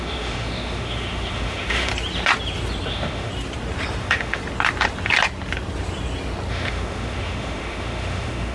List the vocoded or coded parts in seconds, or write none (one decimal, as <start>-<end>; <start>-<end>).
0.0-1.9; 2.9-3.3; 4.0-4.4; 6.5-8.5